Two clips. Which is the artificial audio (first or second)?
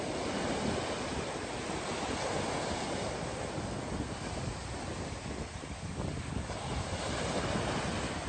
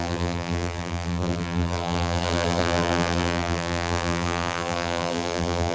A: second